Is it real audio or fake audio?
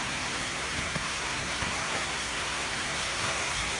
fake